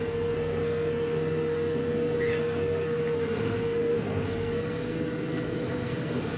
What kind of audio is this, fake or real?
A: fake